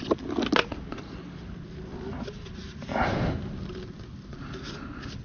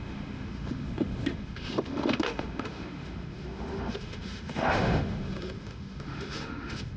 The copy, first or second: second